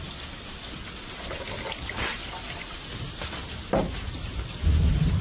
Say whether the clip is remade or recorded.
recorded